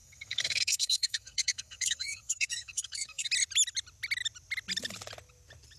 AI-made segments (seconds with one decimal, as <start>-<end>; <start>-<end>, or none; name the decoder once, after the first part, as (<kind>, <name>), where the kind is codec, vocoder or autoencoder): 0.0-3.3 (codec, SNAC)